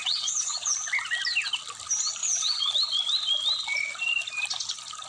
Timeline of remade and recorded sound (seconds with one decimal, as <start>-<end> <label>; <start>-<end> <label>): 0.0-0.7 remade; 0.7-2.2 recorded; 2.2-2.7 remade; 2.7-5.1 recorded